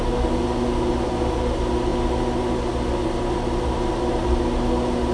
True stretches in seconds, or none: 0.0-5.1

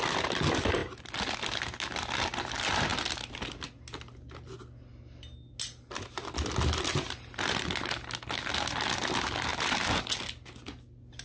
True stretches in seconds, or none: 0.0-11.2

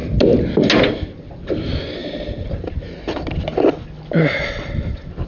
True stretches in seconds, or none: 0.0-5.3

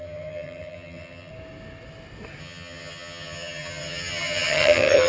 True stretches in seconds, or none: 1.3-2.4

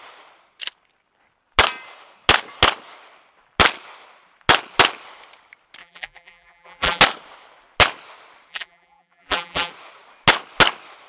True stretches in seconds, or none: 0.0-5.8; 7.0-8.5; 9.7-11.1

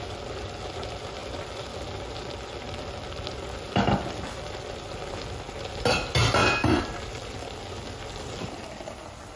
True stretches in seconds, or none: 0.0-6.4

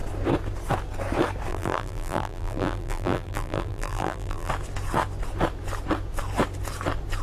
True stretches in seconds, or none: 0.0-1.5; 4.5-7.2

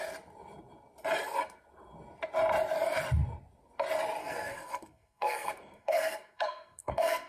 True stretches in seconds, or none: 0.0-4.2